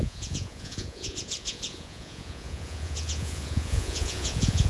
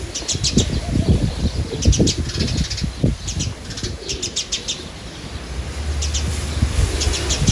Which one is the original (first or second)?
second